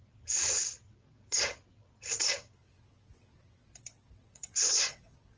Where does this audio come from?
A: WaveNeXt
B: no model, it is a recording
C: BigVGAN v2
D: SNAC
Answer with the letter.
A